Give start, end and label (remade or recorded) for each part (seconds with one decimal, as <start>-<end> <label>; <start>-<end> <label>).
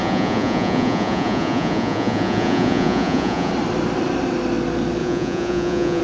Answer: 0.0-3.5 remade; 3.5-5.0 recorded; 5.0-6.0 remade